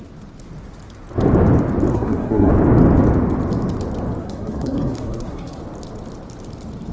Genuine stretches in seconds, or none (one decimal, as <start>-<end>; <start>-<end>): 0.0-1.9; 2.5-4.2; 5.6-6.9